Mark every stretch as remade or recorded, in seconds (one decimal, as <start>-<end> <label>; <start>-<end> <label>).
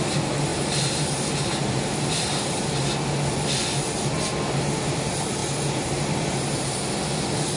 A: 0.0-0.5 recorded; 0.5-2.9 remade; 2.9-5.4 recorded; 5.4-6.9 remade; 6.9-7.6 recorded